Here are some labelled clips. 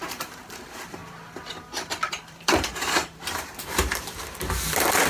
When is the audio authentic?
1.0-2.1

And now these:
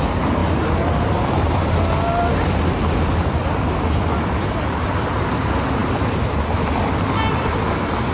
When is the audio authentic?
0.0-0.4; 1.7-8.1

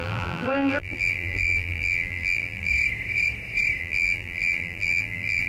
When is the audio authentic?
2.7-3.8

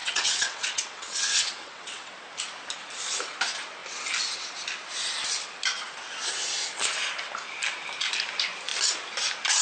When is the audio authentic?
2.1-9.6